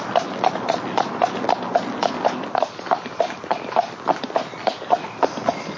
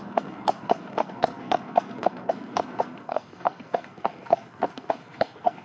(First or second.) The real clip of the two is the first